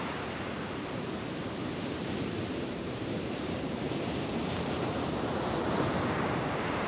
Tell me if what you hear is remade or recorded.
remade